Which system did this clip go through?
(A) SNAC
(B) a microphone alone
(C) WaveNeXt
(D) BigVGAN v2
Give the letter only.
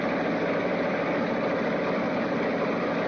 B